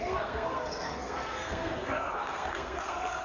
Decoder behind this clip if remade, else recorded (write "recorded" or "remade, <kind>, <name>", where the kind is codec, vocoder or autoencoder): remade, codec, SNAC